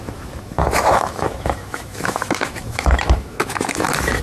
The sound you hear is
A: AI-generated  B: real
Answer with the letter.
A